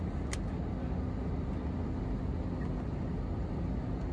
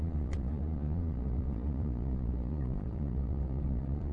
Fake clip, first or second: second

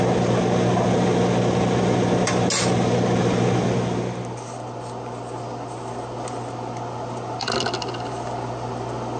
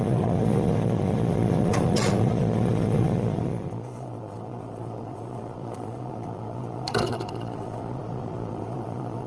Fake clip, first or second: second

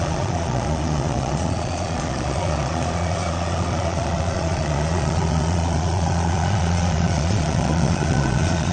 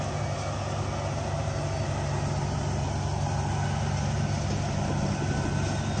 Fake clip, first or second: first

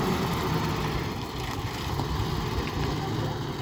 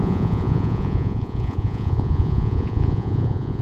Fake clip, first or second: second